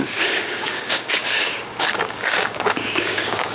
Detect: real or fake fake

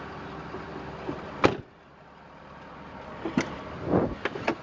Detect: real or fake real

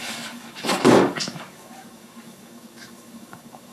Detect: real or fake fake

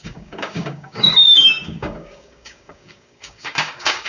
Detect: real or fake fake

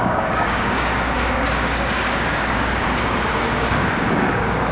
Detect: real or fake fake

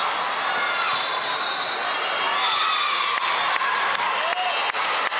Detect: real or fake real